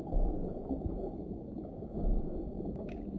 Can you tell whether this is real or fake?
fake